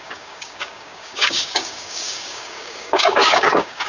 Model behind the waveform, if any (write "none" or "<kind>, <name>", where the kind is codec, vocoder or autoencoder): codec, DAC